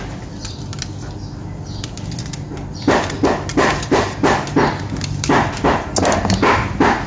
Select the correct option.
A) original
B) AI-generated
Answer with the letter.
A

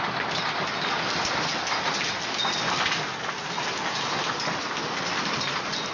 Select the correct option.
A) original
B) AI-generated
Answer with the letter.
A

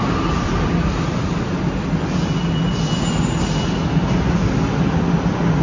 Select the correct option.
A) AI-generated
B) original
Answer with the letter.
B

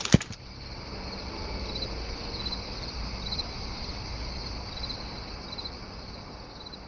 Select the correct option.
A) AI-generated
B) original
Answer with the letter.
B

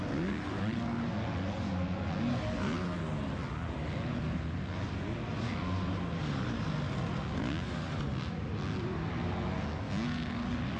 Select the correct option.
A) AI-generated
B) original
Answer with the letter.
B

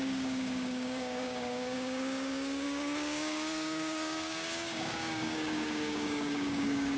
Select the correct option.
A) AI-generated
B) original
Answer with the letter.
A